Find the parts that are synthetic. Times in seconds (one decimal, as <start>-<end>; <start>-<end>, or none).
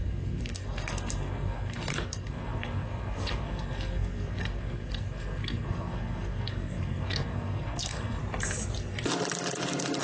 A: 0.0-8.2